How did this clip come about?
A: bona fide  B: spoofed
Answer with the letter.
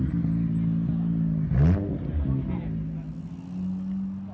A